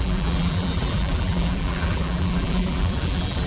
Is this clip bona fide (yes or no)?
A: no